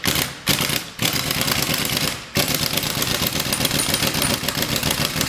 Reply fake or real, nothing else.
fake